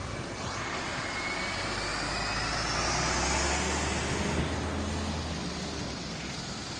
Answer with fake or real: real